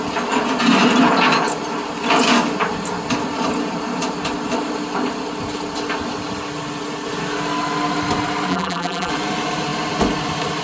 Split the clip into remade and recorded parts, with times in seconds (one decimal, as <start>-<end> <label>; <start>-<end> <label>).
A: 0.0-8.5 recorded; 8.5-9.1 remade; 9.1-10.6 recorded